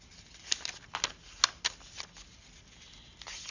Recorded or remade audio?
recorded